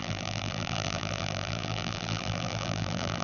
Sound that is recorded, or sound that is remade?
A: remade